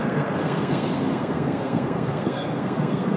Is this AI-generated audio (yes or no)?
yes